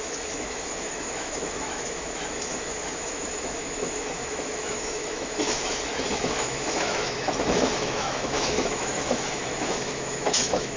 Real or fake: fake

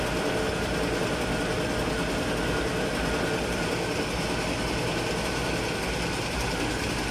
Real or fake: real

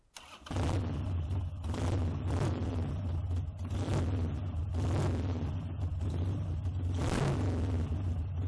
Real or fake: real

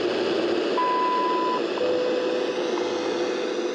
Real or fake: real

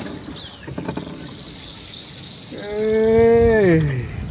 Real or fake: real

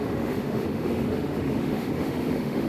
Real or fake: fake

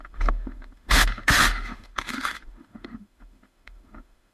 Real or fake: fake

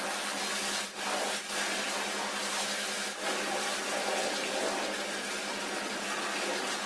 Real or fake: real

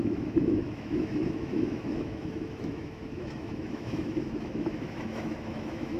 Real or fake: fake